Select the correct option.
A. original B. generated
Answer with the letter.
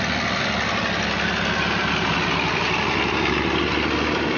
A